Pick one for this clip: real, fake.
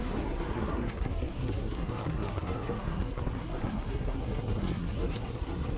fake